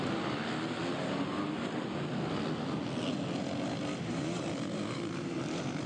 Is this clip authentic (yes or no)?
yes